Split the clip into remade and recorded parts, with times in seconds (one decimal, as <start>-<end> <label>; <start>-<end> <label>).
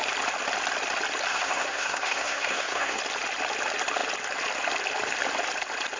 0.0-1.3 recorded; 1.3-3.0 remade; 3.0-6.0 recorded